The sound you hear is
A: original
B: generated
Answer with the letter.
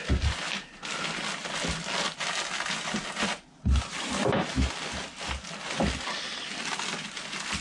A